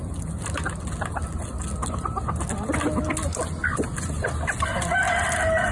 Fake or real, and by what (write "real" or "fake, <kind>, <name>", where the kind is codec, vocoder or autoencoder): real